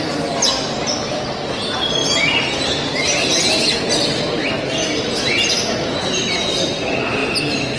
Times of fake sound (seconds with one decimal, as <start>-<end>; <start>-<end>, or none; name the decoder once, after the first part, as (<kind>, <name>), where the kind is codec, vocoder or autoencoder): none